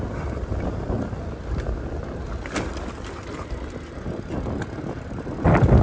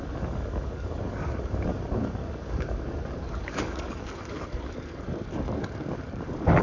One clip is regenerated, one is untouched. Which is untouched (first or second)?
first